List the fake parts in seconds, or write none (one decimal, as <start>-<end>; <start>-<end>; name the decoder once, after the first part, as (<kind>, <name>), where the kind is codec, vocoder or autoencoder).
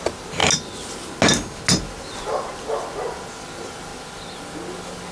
0.0-0.4 (vocoder, BigVGAN v2); 3.5-3.9